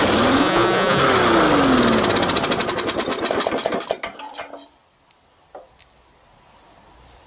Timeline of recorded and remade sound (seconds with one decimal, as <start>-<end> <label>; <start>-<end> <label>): 0.0-0.4 recorded; 0.4-1.0 remade; 1.0-7.3 recorded